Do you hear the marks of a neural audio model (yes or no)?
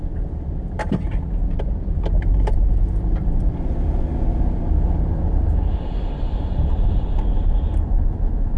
no